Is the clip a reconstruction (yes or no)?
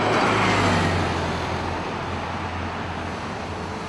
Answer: no